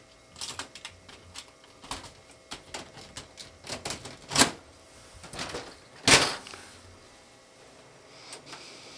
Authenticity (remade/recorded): recorded